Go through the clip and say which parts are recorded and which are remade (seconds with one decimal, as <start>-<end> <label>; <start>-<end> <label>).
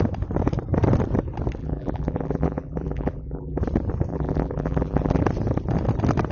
0.0-1.6 recorded; 1.6-3.6 remade; 3.6-4.1 recorded; 4.1-5.2 remade; 5.2-6.3 recorded